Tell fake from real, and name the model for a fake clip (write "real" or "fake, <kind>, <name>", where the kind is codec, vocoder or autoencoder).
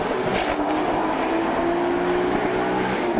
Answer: real